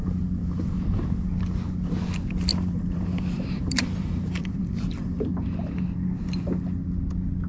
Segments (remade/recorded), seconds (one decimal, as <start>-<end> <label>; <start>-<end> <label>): 0.0-0.4 recorded; 0.4-1.1 remade; 1.1-2.5 recorded; 2.5-5.3 remade; 5.3-7.5 recorded